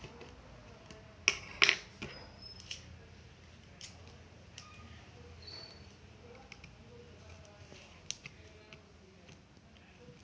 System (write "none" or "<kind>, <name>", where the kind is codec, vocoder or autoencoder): none